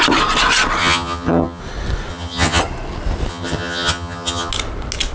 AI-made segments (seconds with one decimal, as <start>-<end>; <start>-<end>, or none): 0.8-1.6; 2.1-2.6; 3.3-4.5